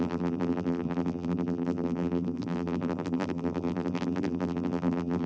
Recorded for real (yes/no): no